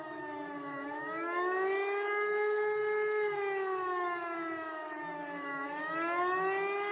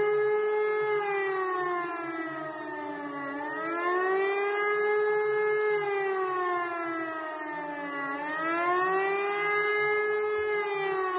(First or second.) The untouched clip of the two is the second